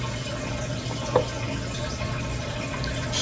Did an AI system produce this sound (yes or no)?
no